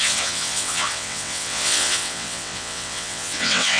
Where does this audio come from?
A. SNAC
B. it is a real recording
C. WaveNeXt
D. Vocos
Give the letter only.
C